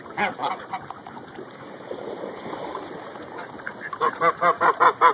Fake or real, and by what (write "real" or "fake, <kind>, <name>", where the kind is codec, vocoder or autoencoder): fake, vocoder, BigVGAN v2